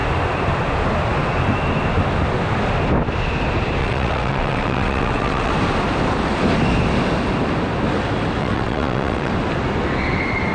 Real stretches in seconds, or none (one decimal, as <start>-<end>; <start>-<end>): 0.0-3.8; 5.5-8.4; 9.3-10.5